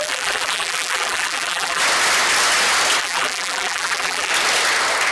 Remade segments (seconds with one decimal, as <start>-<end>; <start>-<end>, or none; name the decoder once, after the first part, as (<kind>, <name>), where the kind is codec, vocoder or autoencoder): 0.0-1.8 (vocoder, BigVGAN v2); 3.0-4.3